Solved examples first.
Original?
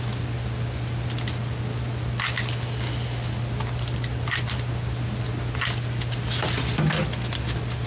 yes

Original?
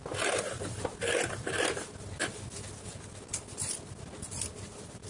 yes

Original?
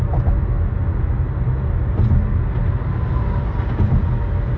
yes